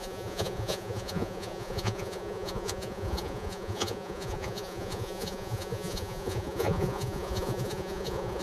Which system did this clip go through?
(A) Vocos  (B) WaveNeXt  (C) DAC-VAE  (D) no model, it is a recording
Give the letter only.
A